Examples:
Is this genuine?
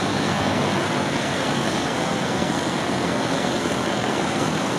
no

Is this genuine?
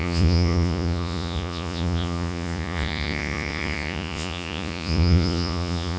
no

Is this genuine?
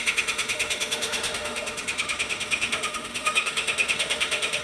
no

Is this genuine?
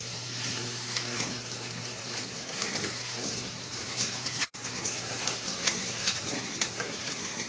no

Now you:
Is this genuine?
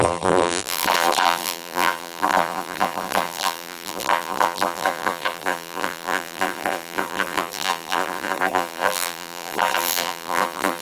no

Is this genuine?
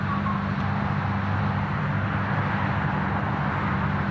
yes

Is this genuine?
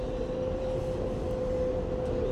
yes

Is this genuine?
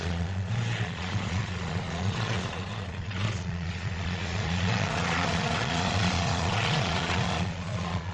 no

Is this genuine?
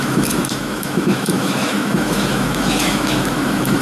no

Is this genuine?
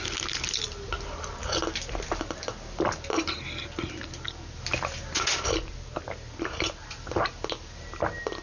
yes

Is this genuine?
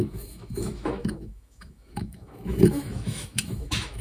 no